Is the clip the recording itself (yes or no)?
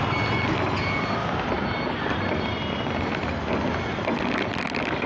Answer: yes